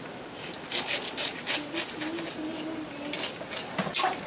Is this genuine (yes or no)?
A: yes